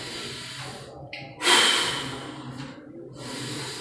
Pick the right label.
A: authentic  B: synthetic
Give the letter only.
A